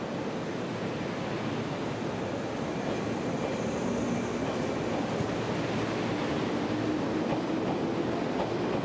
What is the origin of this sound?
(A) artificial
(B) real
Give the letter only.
B